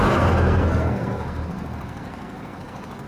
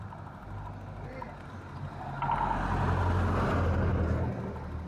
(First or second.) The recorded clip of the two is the second